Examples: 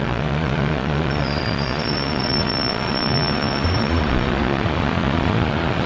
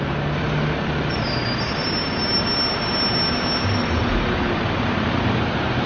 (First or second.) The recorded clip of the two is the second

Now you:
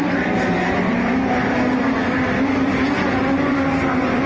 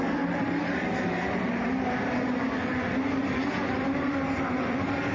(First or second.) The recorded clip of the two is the first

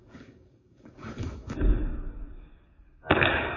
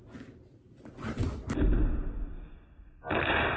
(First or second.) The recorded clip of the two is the second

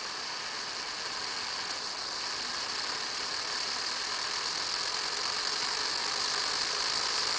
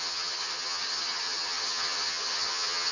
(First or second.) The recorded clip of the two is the first